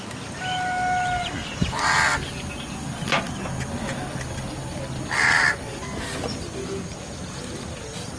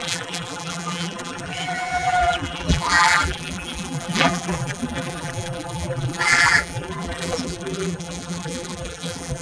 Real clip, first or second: first